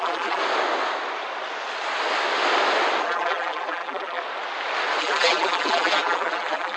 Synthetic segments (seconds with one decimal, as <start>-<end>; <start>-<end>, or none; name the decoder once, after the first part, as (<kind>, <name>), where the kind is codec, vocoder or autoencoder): 0.0-0.4 (vocoder, BigVGAN v2); 3.0-4.2; 5.0-6.8